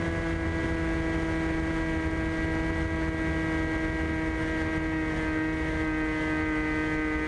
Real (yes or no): yes